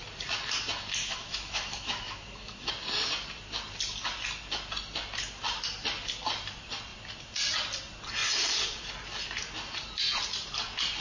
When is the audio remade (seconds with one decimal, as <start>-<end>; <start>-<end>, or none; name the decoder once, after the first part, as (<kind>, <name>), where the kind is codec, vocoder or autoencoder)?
1.0-2.7 (autoencoder, DAC-VAE)